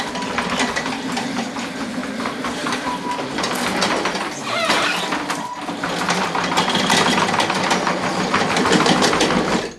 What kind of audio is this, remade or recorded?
recorded